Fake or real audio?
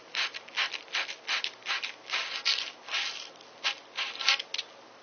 real